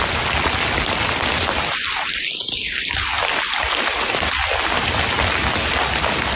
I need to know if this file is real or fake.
real